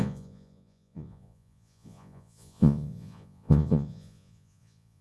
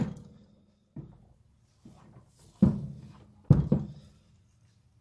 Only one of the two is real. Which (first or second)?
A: second